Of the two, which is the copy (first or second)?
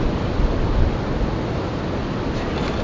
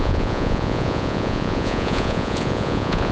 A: second